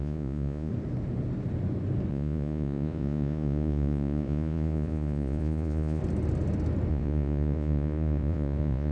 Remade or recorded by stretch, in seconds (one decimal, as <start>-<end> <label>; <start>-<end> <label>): 0.0-0.7 remade; 0.7-2.1 recorded; 2.1-6.0 remade; 6.0-6.9 recorded; 6.9-8.9 remade